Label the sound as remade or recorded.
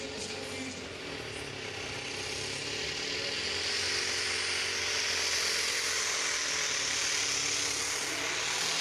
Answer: recorded